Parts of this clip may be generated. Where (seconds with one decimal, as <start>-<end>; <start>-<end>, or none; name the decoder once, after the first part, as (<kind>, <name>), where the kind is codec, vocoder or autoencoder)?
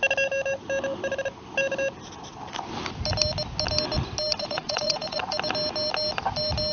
4.4-5.2 (vocoder, Vocos)